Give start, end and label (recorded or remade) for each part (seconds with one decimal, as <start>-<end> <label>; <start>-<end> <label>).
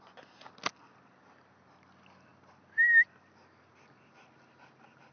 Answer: 0.0-5.1 recorded